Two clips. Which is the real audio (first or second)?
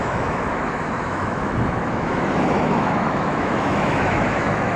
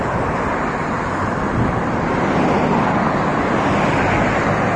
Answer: second